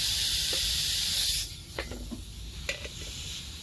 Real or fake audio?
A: fake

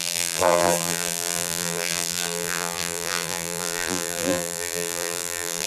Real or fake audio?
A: fake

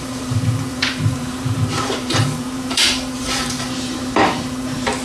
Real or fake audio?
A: fake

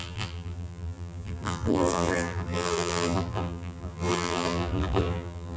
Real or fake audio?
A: fake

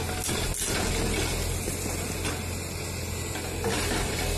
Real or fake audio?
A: real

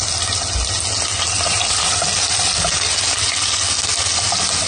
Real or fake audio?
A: real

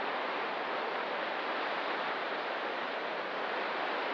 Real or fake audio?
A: real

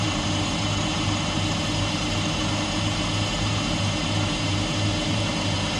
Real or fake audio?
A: fake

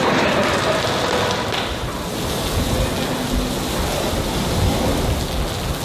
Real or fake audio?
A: real